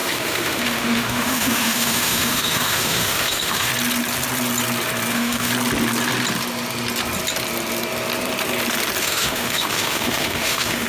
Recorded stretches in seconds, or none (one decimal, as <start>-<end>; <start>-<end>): 3.7-5.1; 5.5-9.0